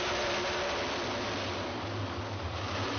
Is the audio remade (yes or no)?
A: no